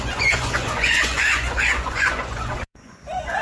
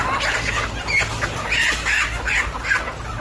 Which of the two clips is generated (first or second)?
first